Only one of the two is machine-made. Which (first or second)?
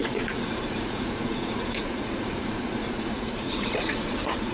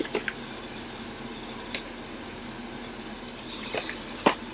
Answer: first